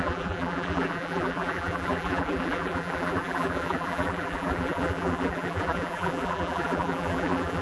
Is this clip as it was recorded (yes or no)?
no